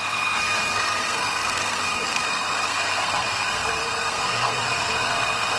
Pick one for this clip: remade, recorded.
remade